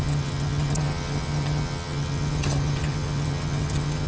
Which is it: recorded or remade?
remade